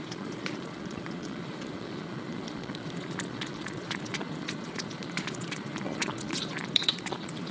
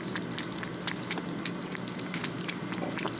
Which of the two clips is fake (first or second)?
first